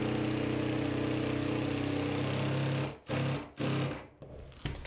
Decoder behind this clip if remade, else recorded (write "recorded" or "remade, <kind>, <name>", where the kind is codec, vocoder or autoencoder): recorded